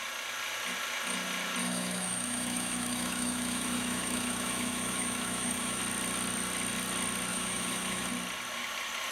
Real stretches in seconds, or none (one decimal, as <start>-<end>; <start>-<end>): 0.0-1.6; 5.8-7.3; 8.1-9.1